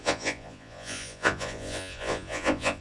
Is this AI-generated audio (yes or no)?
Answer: yes